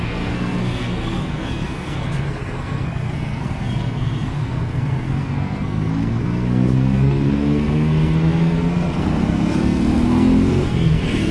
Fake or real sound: fake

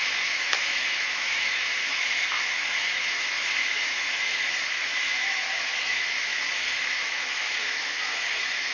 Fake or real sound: fake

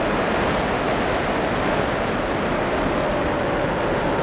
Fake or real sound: real